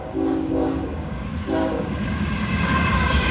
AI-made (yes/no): yes